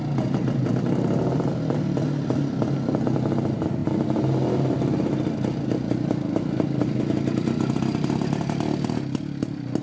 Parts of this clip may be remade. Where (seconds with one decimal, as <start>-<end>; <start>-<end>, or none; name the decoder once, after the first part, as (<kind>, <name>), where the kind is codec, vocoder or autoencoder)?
none